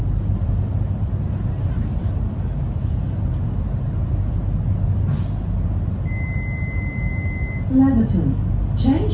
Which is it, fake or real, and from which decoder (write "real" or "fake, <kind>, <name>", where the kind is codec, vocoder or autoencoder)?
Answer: real